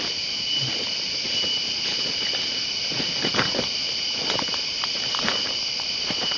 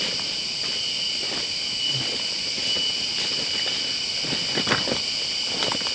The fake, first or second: first